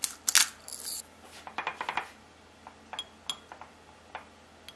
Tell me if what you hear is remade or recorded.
recorded